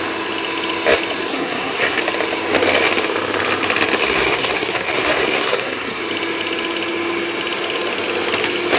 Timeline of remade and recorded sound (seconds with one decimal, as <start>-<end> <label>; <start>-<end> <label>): 0.0-1.3 recorded; 1.3-2.0 remade; 2.0-4.0 recorded; 4.0-6.0 remade; 6.0-8.8 recorded